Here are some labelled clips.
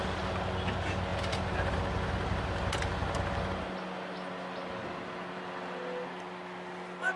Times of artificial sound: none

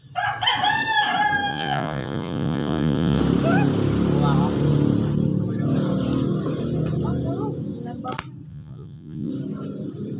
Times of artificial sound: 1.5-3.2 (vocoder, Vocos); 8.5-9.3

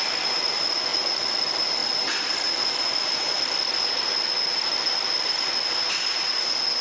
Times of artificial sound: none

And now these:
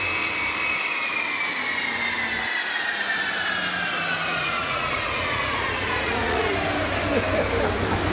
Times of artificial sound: 4.3-6.5 (vocoder, Vocos)

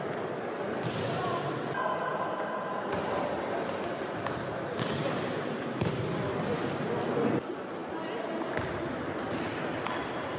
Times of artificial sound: none